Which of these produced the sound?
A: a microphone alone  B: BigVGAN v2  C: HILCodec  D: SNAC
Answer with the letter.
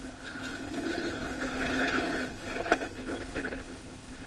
C